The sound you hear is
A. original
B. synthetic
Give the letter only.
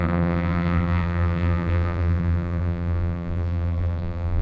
B